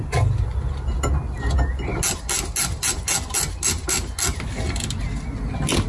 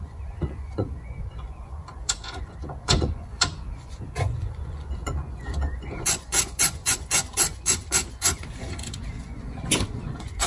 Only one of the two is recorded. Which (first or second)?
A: first